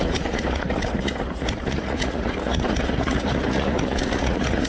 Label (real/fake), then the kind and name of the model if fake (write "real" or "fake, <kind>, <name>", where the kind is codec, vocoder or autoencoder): fake, vocoder, Vocos